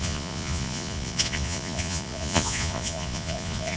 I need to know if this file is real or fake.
fake